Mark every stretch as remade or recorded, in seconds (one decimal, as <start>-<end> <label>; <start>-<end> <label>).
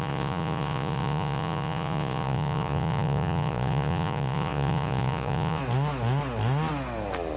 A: 0.0-5.6 remade; 5.6-7.4 recorded